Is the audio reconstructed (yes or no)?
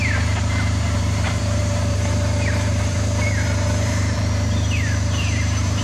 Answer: yes